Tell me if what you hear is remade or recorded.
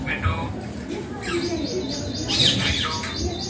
recorded